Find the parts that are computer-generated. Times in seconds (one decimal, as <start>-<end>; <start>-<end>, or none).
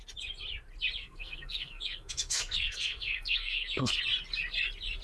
1.0-4.0